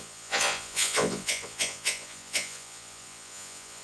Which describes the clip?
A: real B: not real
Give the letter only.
B